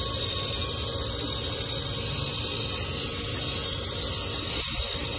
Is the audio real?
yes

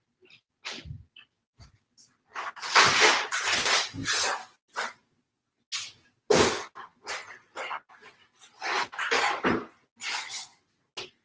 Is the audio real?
yes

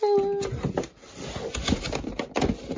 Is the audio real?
yes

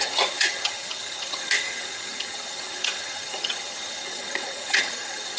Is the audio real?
no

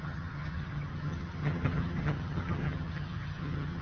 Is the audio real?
no